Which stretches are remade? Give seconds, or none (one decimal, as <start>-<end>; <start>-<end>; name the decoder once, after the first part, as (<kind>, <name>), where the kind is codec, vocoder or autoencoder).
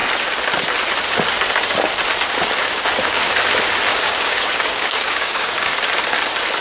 2.6-3.3 (codec, DAC); 3.9-5.8